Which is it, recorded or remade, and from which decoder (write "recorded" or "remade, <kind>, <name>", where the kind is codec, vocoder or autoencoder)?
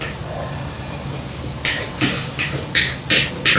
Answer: recorded